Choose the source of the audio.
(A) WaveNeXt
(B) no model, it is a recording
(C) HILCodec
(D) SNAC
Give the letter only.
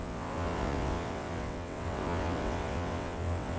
A